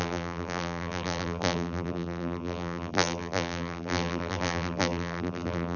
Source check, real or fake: fake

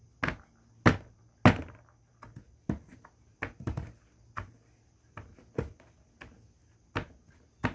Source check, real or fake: real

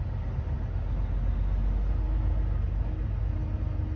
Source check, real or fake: real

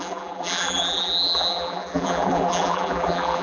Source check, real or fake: fake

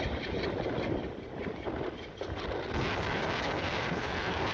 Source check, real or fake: real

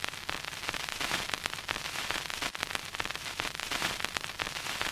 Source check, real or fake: real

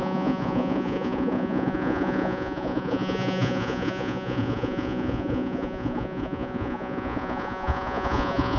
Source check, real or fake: fake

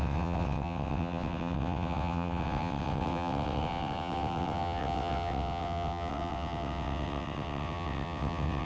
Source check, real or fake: fake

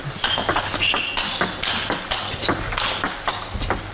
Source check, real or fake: real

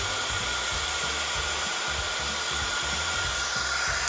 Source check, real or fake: real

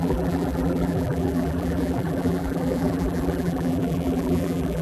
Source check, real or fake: fake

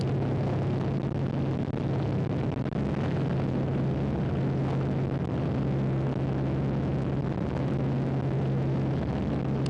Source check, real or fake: real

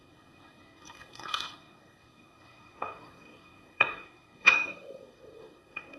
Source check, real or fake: fake